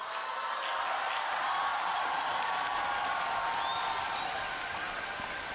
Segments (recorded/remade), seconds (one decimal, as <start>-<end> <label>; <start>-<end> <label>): 0.0-5.5 recorded